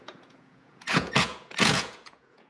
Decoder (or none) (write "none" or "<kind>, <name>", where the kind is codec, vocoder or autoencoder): vocoder, Vocos